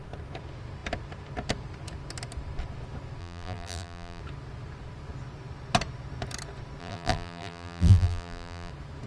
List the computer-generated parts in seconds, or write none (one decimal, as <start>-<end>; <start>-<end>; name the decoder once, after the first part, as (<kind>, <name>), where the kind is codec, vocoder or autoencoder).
3.2-4.2 (vocoder, BigVGAN v2); 6.8-8.7